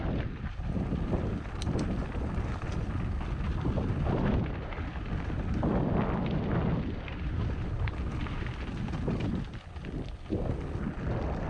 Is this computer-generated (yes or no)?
no